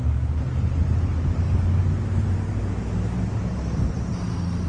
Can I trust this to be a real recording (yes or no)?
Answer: yes